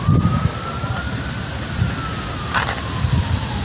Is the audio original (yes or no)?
yes